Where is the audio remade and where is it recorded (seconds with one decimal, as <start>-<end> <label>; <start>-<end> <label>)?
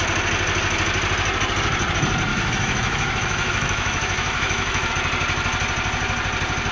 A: 0.0-2.3 recorded; 2.3-4.9 remade; 4.9-6.7 recorded